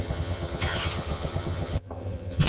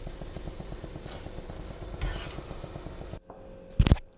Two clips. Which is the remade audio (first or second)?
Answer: first